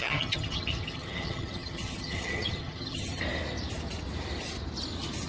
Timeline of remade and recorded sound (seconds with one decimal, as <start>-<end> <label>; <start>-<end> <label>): 0.0-3.2 remade; 3.2-5.3 recorded